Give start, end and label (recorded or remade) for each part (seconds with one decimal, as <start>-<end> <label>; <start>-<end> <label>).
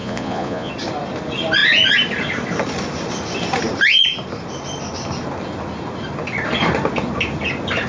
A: 0.0-0.7 remade; 0.7-7.9 recorded